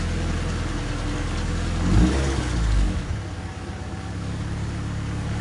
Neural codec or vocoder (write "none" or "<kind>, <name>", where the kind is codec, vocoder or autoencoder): codec, DAC